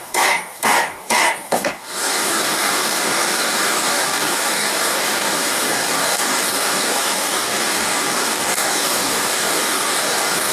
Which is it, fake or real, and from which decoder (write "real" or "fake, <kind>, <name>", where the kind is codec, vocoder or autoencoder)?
fake, codec, DAC